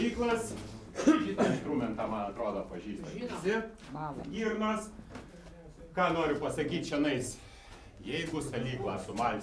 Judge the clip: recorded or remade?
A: recorded